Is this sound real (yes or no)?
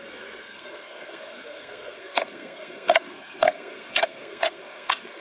no